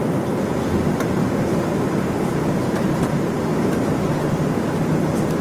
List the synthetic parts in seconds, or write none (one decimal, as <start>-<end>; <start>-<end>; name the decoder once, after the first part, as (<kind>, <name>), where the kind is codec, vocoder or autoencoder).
none

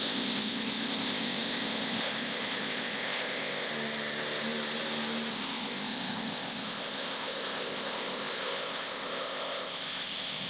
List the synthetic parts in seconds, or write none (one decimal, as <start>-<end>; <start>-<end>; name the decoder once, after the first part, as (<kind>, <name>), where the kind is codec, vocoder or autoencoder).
0.0-3.7 (codec, ZipCodec); 5.3-10.5